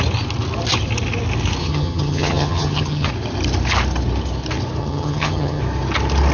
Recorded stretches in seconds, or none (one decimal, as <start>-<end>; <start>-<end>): 0.0-1.6; 3.1-4.8; 5.6-6.3